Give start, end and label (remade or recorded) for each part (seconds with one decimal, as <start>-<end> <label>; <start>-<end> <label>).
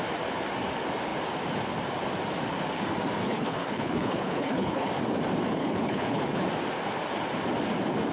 0.0-3.2 recorded; 3.2-4.9 remade; 4.9-5.6 recorded; 5.6-6.3 remade; 6.3-8.1 recorded